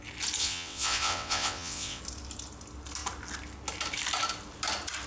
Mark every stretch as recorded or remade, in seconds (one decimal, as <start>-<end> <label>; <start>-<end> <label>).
0.0-0.4 recorded; 0.4-2.0 remade; 2.0-5.1 recorded